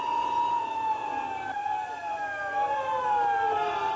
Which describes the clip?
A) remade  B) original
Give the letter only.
B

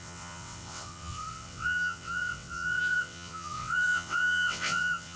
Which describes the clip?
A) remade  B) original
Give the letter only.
A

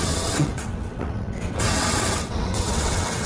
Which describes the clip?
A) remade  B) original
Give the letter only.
A